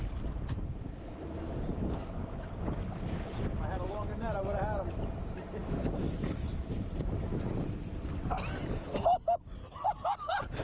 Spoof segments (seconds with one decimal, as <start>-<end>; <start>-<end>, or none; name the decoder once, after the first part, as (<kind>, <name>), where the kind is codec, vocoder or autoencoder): none